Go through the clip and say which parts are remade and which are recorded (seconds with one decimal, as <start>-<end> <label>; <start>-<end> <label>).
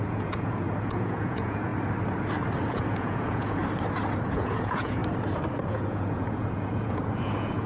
0.0-1.7 remade; 1.7-2.7 recorded; 2.7-3.6 remade; 3.6-4.3 recorded; 4.3-5.0 remade; 5.0-5.6 recorded; 5.6-7.7 remade